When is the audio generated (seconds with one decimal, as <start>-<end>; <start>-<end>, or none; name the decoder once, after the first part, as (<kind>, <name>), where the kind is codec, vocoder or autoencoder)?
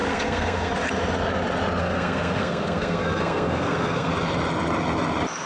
0.0-0.7 (codec, SNAC); 1.8-4.1